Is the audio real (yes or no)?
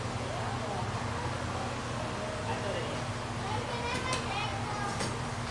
yes